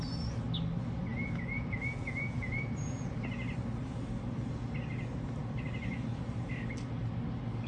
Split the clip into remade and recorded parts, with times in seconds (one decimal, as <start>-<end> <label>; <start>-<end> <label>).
0.0-1.1 recorded; 1.1-3.1 remade; 3.1-7.7 recorded